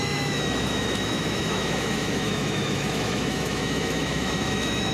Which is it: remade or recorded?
remade